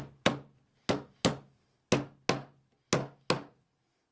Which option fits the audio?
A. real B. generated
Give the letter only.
A